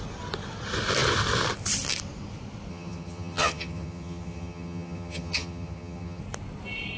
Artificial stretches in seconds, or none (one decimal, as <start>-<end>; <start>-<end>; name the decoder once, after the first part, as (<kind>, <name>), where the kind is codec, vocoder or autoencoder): 2.7-6.2 (vocoder, HiFi-GAN)